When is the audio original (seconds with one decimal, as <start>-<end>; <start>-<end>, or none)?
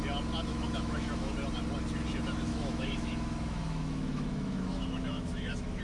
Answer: 0.0-0.5; 1.3-2.5